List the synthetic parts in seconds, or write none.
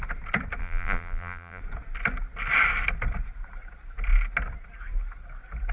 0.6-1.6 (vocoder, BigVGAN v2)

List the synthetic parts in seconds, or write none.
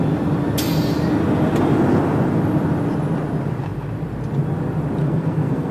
5.0-5.7 (codec, SNAC)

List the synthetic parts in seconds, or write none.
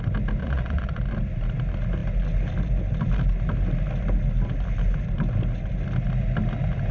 0.4-1.0 (vocoder, Vocos)